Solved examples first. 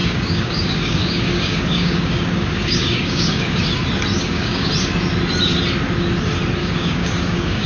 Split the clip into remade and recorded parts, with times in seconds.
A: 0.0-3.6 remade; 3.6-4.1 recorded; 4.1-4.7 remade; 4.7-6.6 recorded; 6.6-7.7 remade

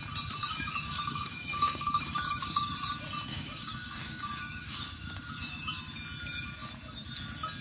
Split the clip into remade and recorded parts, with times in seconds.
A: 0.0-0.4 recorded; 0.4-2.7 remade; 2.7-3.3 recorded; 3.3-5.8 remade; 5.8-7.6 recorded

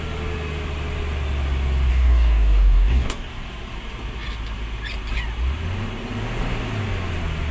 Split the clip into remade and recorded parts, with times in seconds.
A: 0.0-1.9 recorded; 1.9-3.3 remade; 3.3-7.5 recorded

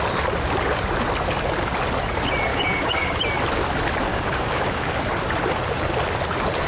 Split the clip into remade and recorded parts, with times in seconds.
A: 0.0-2.5 recorded; 2.5-3.2 remade; 3.2-4.1 recorded; 4.1-5.0 remade; 5.0-6.7 recorded

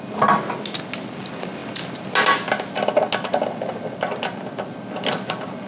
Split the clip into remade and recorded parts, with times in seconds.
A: 0.0-5.7 recorded

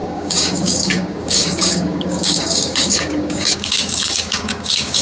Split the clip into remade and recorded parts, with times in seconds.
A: 0.0-5.0 remade

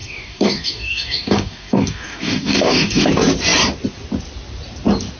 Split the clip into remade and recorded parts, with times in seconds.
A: 0.0-3.1 remade; 3.1-5.2 recorded

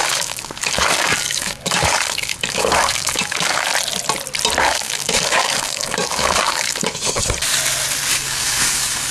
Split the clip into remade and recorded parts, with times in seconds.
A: 0.0-3.7 remade; 3.7-4.6 recorded; 4.6-7.2 remade; 7.2-8.1 recorded; 8.1-9.1 remade